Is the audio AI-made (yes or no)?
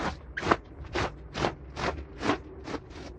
no